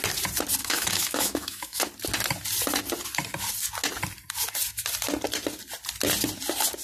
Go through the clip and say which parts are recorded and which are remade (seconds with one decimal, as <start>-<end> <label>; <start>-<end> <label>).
0.0-0.6 recorded; 0.6-1.8 remade; 1.8-6.8 recorded